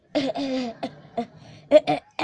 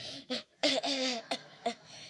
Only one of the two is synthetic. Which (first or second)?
second